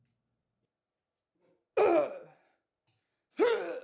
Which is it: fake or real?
real